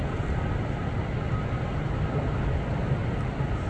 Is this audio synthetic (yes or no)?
no